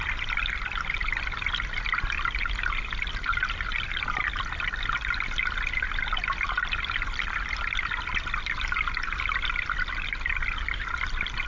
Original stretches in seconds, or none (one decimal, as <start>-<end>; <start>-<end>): 0.0-11.5